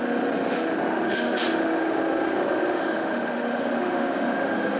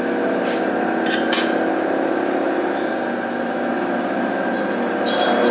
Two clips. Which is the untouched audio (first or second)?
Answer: second